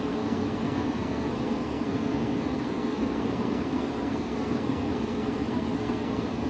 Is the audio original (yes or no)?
no